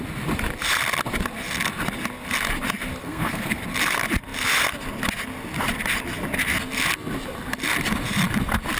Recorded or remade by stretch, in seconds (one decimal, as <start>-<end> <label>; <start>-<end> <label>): 0.0-3.0 recorded; 3.0-3.6 remade; 3.6-8.8 recorded